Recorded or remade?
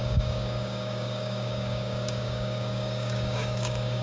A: remade